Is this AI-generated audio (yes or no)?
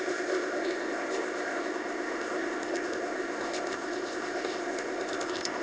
yes